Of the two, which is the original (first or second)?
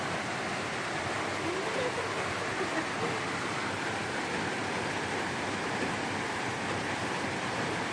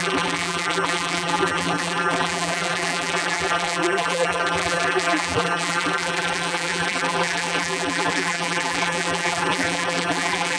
first